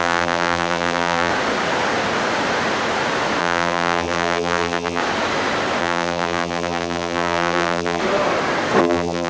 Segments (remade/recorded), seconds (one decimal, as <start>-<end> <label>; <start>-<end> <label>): 0.0-1.3 remade; 1.3-3.4 recorded; 3.4-5.0 remade; 5.0-5.8 recorded; 5.8-8.0 remade; 8.0-8.8 recorded; 8.8-9.3 remade